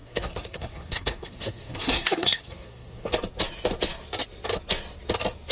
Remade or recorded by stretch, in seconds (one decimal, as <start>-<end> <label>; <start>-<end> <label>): 0.0-3.1 remade; 3.1-5.5 recorded